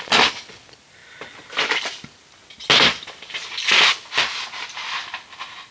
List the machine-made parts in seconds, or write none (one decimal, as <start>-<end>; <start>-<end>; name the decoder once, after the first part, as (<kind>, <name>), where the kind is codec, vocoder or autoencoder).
none